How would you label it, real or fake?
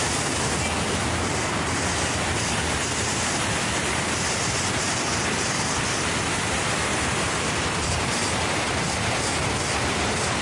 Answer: real